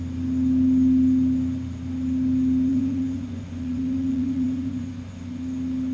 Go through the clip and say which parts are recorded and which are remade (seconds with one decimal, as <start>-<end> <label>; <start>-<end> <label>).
0.0-2.7 recorded; 2.7-5.4 remade; 5.4-5.9 recorded